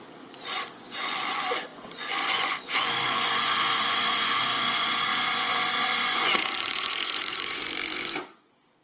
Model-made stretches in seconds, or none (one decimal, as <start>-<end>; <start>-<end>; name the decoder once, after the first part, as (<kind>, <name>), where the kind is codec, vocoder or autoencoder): 0.0-8.8 (vocoder, Vocos)